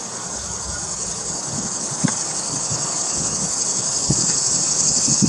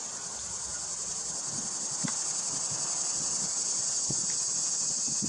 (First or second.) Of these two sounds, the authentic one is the second